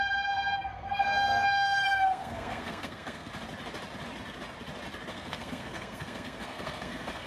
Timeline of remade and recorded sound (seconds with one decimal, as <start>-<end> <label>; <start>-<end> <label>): 0.0-3.3 remade; 3.3-5.1 recorded; 5.1-7.3 remade